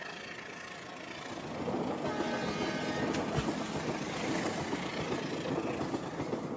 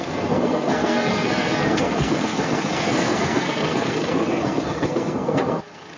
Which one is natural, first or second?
first